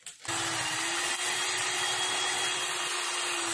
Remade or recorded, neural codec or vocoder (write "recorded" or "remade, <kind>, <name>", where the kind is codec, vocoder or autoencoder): recorded